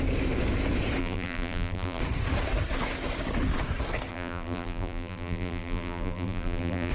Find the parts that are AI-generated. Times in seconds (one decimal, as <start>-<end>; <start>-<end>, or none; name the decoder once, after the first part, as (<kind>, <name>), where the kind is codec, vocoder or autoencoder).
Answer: 1.0-2.0 (vocoder, BigVGAN v2); 4.1-6.9